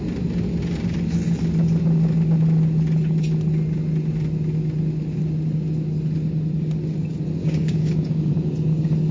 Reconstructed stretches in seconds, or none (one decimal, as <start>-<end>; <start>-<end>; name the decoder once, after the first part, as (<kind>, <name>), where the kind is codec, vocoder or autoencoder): 7.4-8.3 (codec, DAC)